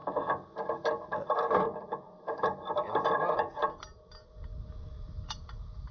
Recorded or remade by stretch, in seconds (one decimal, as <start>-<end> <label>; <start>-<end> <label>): 0.0-5.9 recorded